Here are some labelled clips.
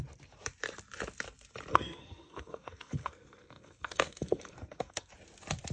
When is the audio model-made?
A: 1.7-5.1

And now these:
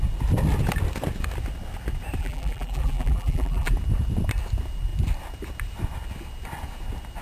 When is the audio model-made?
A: 2.2-3.7